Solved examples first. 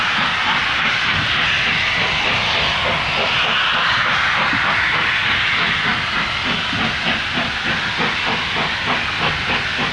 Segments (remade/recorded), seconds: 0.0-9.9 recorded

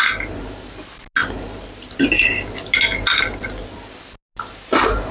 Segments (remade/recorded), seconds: 0.0-5.1 recorded

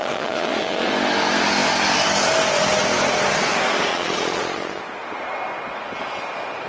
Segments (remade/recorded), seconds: 0.0-0.9 remade; 0.9-3.9 recorded; 3.9-4.8 remade; 4.8-6.7 recorded

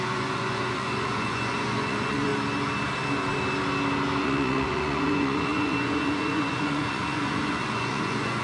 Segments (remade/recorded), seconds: 0.0-2.3 remade; 2.3-4.2 recorded; 4.2-8.4 remade

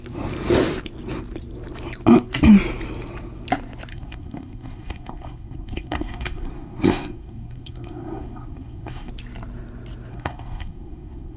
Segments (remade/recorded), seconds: 0.0-3.9 recorded; 3.9-9.1 remade; 9.1-10.1 recorded; 10.1-11.4 remade

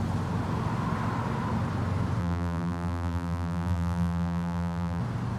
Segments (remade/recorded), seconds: 0.0-2.2 recorded; 2.2-5.0 remade; 5.0-5.4 recorded

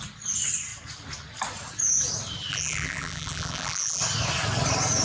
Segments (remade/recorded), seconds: 0.0-2.5 recorded; 2.5-4.0 remade; 4.0-5.0 recorded